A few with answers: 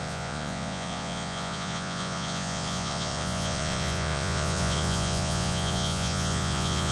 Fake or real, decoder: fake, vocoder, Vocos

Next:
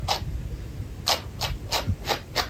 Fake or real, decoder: real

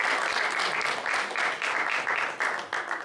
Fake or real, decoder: real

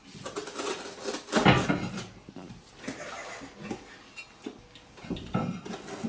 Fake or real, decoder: real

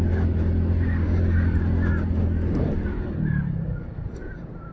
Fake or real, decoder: real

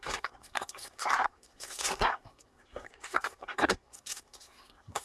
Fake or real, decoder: fake, codec, SNAC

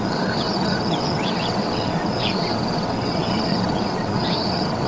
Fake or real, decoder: fake, vocoder, WaveNeXt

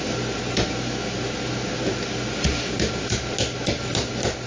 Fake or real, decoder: real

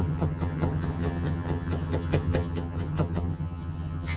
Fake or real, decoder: fake, vocoder, HiFi-GAN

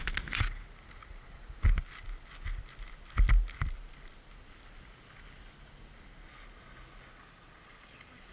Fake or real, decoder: real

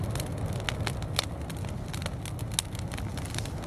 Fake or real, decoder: real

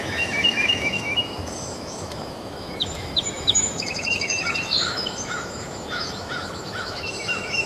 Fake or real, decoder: fake, autoencoder, DAC-VAE